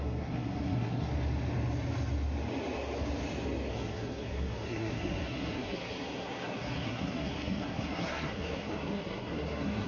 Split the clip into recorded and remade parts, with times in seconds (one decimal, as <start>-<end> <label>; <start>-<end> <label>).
0.0-1.1 remade; 1.1-3.7 recorded; 3.7-9.9 remade